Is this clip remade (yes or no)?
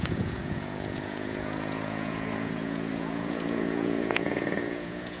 yes